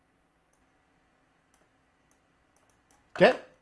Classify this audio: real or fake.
real